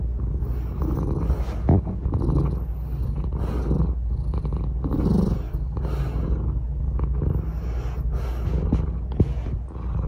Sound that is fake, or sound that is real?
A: real